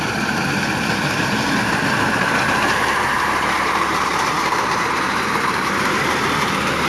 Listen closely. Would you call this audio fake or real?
fake